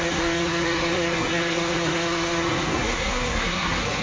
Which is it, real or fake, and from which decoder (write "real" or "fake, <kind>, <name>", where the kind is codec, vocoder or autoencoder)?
fake, codec, SNAC